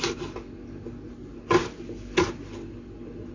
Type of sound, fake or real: real